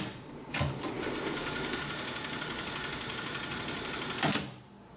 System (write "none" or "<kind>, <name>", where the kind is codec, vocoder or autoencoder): none